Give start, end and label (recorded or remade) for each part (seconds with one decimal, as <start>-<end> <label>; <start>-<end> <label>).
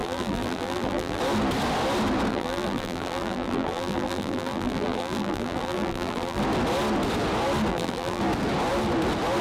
0.0-1.2 remade; 1.2-2.3 recorded; 2.3-6.4 remade; 6.4-7.7 recorded; 7.7-8.2 remade; 8.2-9.4 recorded